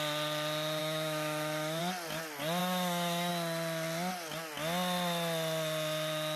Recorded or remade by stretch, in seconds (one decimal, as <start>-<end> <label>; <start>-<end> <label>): 0.0-0.8 recorded; 0.8-1.8 remade; 1.8-2.6 recorded; 2.6-3.3 remade; 3.3-6.4 recorded